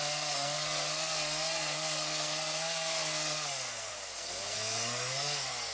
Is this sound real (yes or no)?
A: no